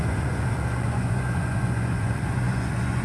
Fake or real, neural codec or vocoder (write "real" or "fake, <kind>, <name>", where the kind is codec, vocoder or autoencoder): fake, vocoder, Vocos